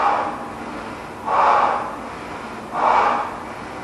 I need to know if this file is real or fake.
real